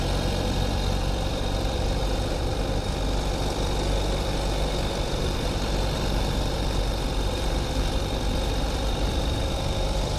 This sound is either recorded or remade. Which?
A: remade